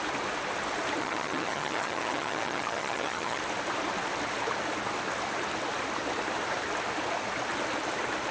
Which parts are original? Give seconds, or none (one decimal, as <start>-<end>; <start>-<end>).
0.0-1.0; 3.4-8.3